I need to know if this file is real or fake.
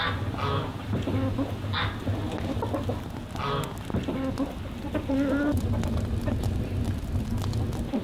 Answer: real